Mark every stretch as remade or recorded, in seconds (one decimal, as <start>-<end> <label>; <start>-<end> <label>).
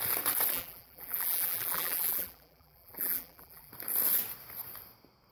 0.0-0.5 recorded; 0.5-3.7 remade; 3.7-5.3 recorded